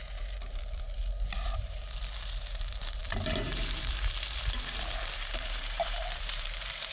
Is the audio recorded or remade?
remade